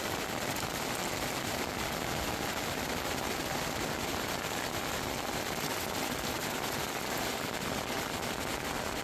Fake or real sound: real